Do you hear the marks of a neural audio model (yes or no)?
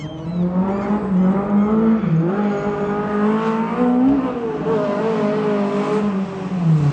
no